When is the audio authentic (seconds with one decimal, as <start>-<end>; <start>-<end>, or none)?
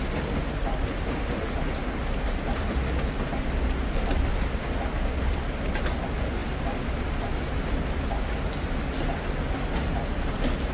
0.0-10.7